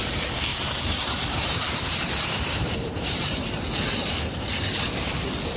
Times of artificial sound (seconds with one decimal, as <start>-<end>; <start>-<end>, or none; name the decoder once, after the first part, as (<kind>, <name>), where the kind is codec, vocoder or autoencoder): 0.5-3.5 (vocoder, BigVGAN v2); 4.0-4.8